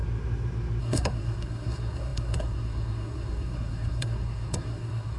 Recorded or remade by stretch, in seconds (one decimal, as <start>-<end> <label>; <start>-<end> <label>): 0.0-0.8 recorded; 0.8-5.2 remade